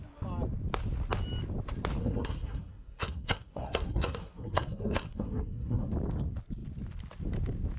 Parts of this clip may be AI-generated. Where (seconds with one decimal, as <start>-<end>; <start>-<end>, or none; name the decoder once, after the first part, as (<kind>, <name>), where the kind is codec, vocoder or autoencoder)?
2.0-5.9 (codec, SNAC)